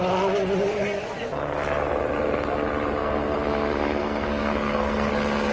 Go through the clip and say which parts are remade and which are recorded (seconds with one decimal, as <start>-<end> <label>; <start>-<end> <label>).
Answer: 0.0-3.0 recorded; 3.0-5.1 remade; 5.1-5.5 recorded